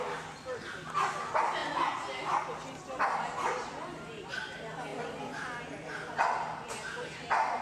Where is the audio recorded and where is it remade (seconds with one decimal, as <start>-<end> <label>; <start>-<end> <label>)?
0.0-7.6 recorded